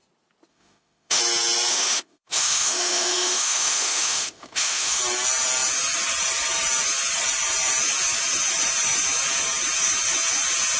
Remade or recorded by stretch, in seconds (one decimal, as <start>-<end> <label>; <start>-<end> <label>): 0.0-0.5 recorded; 0.5-1.2 remade; 1.2-1.7 recorded; 1.7-5.0 remade; 5.0-10.8 recorded